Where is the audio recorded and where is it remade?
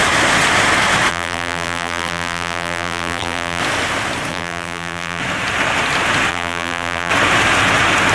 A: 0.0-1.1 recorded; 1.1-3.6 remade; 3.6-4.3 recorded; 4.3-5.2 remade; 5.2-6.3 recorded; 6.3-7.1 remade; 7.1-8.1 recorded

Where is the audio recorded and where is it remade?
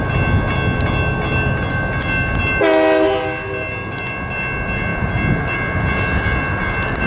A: 0.0-7.1 recorded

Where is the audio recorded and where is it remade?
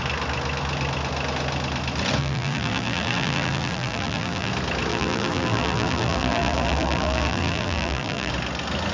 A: 0.0-2.2 recorded; 2.2-4.5 remade; 4.5-4.9 recorded; 4.9-8.3 remade; 8.3-8.9 recorded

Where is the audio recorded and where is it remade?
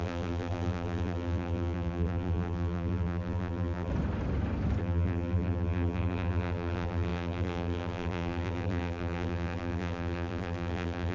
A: 0.0-3.9 remade; 3.9-4.8 recorded; 4.8-11.1 remade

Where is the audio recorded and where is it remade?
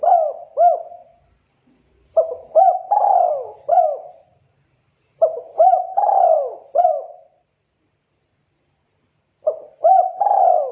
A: 0.0-1.0 recorded; 1.0-2.6 remade; 2.6-4.3 recorded; 4.3-9.6 remade; 9.6-10.7 recorded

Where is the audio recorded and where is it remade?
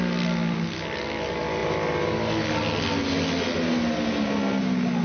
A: 0.0-5.0 recorded